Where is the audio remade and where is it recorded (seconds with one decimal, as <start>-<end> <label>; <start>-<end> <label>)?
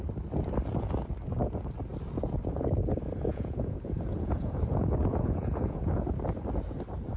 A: 0.0-3.3 recorded; 3.3-6.0 remade; 6.0-7.2 recorded